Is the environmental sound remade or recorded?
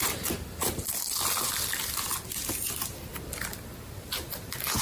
recorded